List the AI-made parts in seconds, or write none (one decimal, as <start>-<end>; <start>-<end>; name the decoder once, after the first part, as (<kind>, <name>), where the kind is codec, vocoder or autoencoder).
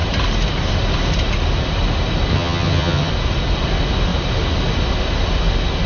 2.3-3.1 (vocoder, HiFi-GAN)